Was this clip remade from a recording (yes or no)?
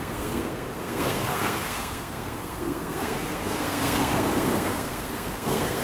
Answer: yes